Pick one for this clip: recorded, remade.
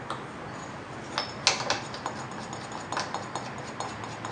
recorded